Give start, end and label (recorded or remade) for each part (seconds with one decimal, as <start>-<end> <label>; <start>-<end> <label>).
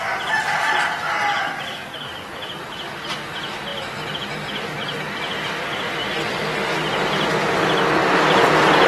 0.0-8.9 recorded